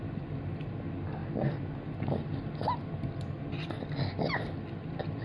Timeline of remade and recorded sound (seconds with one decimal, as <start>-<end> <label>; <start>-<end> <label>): 0.0-5.2 recorded